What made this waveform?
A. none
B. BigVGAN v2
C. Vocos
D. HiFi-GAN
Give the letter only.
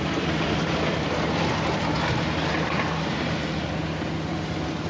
B